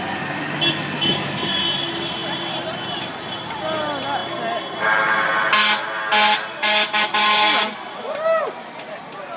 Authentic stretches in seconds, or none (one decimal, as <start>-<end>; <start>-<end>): 0.0-9.4